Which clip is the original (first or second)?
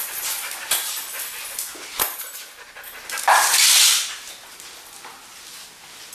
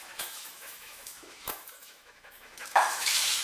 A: first